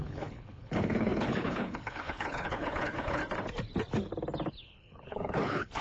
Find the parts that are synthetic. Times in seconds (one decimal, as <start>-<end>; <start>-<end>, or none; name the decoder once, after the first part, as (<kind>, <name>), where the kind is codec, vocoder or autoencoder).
0.0-3.2 (codec, HILCodec); 4.5-5.8

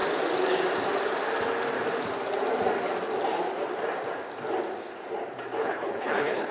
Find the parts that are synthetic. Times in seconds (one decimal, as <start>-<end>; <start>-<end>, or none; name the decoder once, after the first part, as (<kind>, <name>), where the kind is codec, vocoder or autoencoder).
5.6-6.5 (codec, HILCodec)

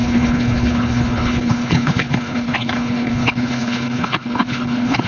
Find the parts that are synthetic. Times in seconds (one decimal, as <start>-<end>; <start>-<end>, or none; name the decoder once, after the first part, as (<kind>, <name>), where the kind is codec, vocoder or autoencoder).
0.0-5.1 (codec, HILCodec)

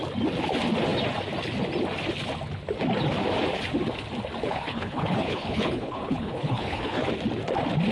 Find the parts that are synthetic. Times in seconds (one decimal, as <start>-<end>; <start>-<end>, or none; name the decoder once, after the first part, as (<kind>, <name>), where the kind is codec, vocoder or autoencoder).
4.5-7.1 (codec, HILCodec)

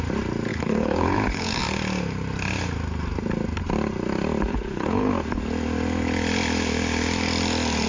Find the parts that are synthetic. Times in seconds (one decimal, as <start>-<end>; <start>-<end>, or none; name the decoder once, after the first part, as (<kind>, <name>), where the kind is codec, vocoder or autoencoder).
0.5-1.6 (codec, HILCodec); 4.5-5.1

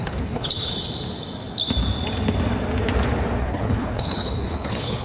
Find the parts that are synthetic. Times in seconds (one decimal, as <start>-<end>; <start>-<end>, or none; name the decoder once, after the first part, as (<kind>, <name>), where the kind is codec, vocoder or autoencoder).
0.0-0.7 (codec, HILCodec); 3.4-5.0

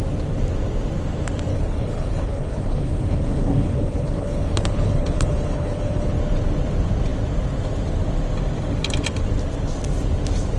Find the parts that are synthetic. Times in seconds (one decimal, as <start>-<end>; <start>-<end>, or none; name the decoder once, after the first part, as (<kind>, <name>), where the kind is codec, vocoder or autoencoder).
1.5-6.1 (codec, HILCodec)

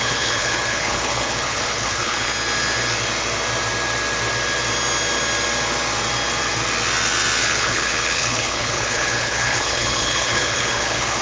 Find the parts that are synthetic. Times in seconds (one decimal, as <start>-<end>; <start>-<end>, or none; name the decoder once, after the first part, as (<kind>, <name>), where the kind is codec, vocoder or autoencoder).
0.0-2.3 (codec, HILCodec); 7.4-11.2